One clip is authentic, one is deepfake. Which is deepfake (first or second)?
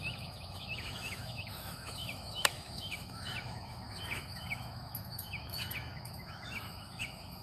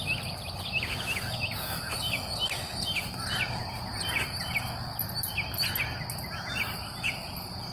first